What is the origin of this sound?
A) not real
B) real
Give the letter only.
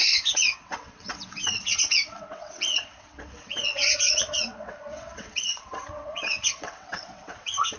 A